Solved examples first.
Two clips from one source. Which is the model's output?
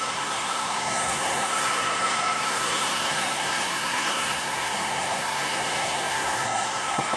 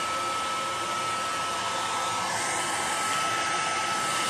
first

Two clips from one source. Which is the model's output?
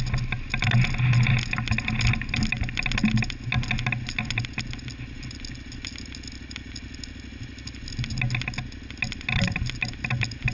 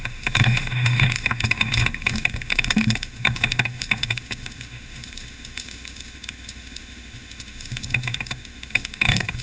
second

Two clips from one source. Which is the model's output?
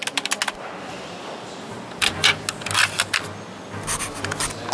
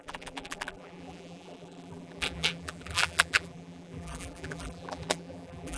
second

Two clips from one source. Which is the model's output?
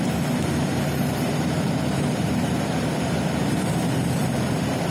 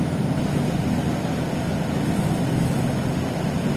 first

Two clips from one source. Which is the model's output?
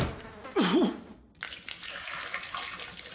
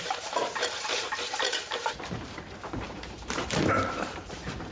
second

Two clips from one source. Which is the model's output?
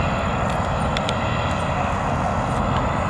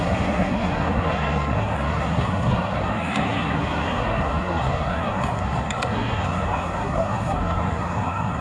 second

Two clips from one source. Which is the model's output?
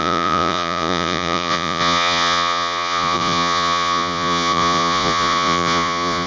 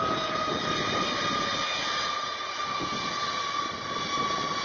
first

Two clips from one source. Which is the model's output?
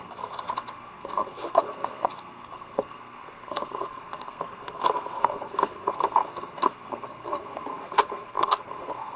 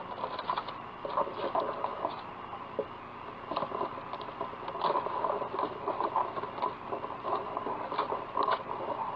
first